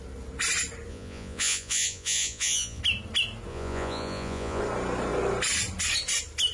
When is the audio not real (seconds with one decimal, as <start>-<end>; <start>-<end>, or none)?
0.9-2.8; 3.5-4.6